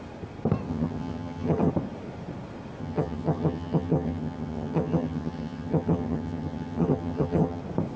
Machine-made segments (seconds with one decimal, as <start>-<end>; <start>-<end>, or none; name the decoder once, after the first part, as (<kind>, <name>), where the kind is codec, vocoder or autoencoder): 0.7-1.7 (vocoder, HiFi-GAN); 2.8-7.6